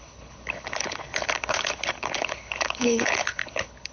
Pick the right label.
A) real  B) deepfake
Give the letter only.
B